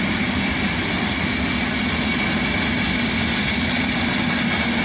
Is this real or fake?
real